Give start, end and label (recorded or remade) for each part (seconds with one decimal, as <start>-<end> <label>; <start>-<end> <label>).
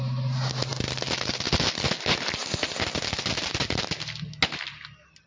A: 0.0-5.3 recorded